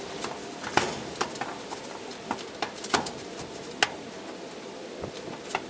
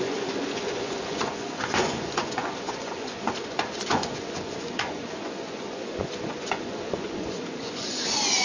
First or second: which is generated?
second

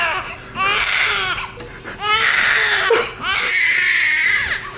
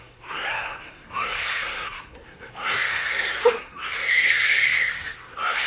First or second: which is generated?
second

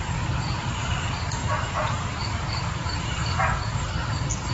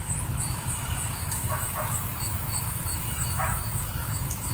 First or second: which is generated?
second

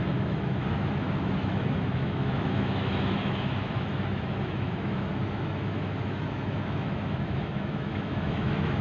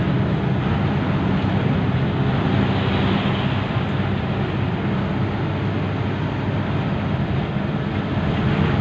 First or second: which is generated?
first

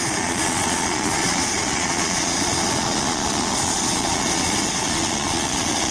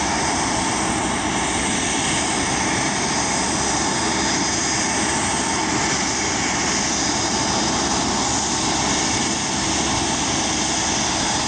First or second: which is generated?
first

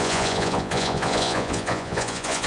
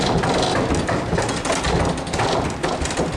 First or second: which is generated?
first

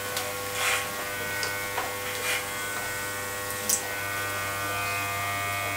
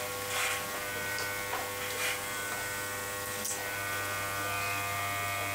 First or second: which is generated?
second